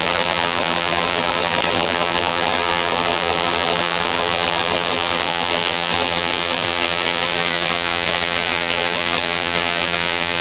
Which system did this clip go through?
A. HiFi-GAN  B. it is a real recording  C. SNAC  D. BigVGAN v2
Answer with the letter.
D